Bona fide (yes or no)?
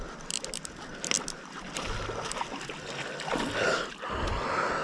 yes